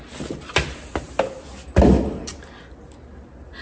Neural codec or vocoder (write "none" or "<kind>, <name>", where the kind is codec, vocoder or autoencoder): none